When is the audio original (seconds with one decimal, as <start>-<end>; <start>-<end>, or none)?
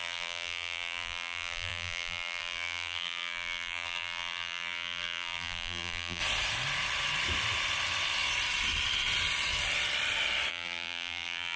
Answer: 6.2-10.5